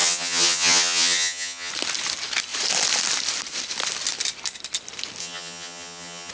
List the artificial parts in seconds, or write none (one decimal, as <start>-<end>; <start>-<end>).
0.0-1.7; 5.2-6.3